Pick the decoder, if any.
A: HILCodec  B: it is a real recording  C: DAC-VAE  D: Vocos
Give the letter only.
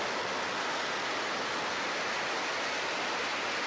B